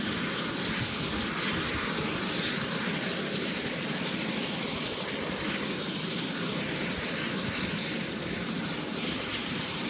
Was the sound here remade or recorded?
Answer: recorded